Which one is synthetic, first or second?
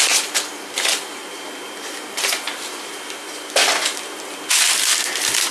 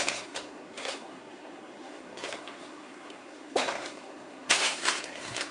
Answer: second